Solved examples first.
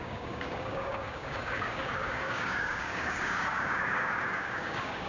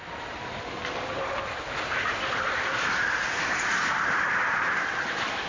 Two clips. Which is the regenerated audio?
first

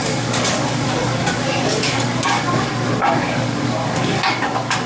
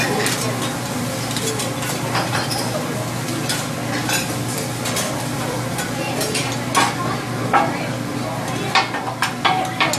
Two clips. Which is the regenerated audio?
first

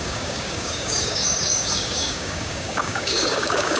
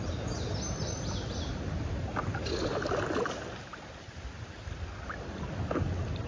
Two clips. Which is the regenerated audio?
first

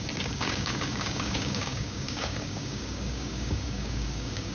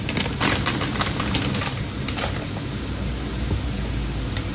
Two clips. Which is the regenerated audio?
first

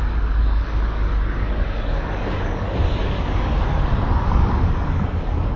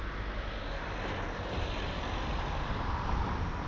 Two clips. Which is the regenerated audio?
first